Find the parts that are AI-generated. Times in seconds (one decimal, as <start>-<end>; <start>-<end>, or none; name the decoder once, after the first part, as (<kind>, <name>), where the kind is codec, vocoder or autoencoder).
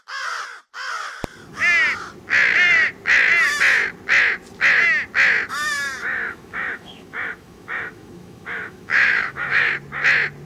6.0-9.7 (autoencoder, DAC-VAE)